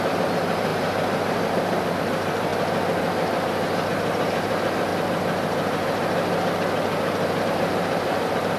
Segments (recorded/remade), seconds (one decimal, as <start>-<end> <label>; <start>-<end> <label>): 0.0-2.5 remade; 2.5-3.9 recorded; 3.9-4.9 remade; 4.9-7.4 recorded; 7.4-8.6 remade